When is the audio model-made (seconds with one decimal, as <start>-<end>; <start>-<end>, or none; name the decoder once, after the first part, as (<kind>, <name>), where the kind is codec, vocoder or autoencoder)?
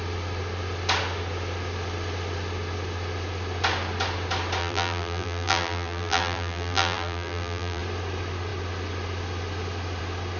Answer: 4.6-7.8 (vocoder, BigVGAN v2)